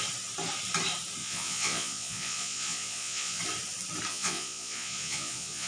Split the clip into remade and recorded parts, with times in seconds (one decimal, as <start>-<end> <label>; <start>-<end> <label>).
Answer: 0.0-1.2 recorded; 1.2-3.4 remade; 3.4-4.1 recorded; 4.1-5.7 remade